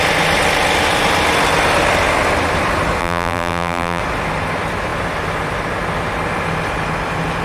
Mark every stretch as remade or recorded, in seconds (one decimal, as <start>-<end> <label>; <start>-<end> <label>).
0.0-3.0 recorded; 3.0-4.0 remade; 4.0-7.4 recorded